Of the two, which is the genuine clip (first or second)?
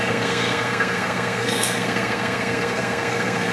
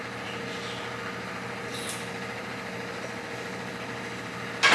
second